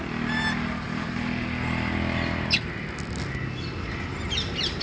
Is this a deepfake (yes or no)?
no